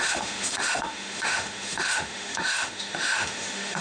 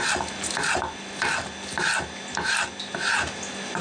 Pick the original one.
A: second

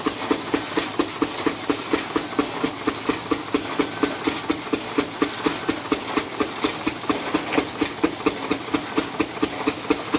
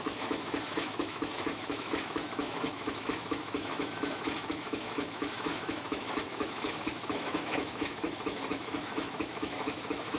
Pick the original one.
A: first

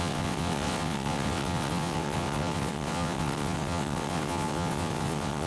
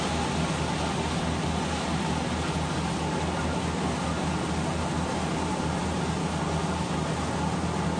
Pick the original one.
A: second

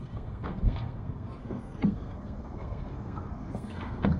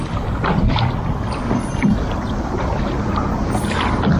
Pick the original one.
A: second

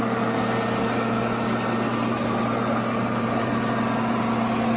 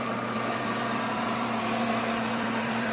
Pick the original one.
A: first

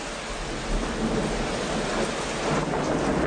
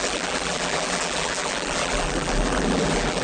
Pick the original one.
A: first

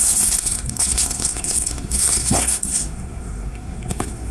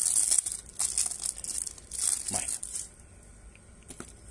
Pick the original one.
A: second